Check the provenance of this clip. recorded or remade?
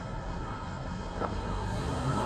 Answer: remade